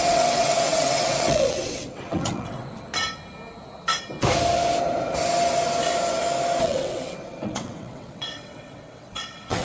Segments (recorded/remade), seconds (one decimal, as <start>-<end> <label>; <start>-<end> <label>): 0.0-2.9 remade; 2.9-6.6 recorded; 6.6-9.6 remade